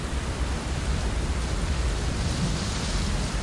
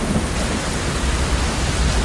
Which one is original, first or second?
second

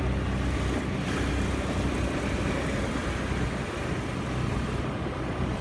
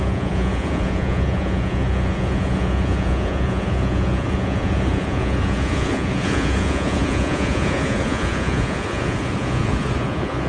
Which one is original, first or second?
first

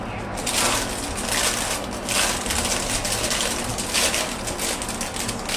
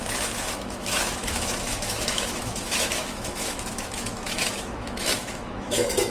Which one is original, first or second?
first